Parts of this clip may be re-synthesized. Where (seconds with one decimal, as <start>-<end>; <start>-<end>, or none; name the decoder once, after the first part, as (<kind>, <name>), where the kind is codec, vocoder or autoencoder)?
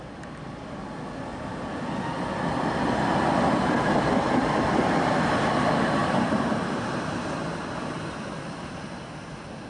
none